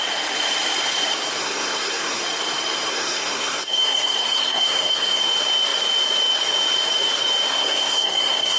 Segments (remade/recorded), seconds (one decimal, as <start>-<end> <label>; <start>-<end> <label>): 0.0-1.4 recorded; 1.4-2.2 remade; 2.2-2.9 recorded; 2.9-5.2 remade; 5.2-7.5 recorded; 7.5-8.6 remade